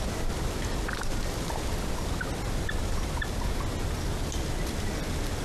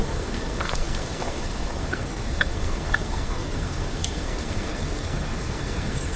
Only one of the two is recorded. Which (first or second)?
first